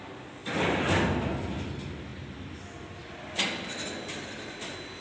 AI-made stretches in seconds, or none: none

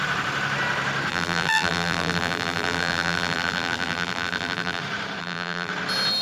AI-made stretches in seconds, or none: 1.1-4.8; 5.2-5.7

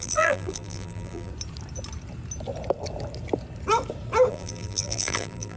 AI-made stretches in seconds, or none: 0.0-1.3; 4.3-5.6

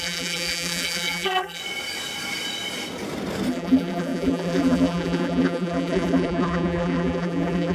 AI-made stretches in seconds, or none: 0.0-1.6; 3.5-7.7

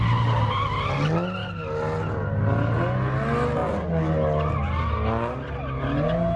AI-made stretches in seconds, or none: none

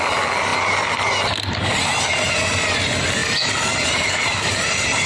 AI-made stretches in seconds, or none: 3.2-5.1

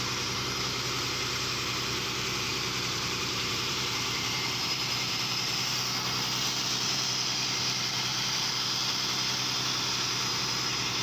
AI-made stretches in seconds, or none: 2.5-5.7